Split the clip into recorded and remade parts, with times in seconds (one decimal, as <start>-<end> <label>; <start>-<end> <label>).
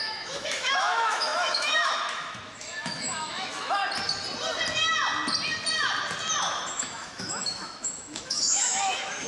0.0-3.8 remade; 3.8-6.4 recorded; 6.4-9.3 remade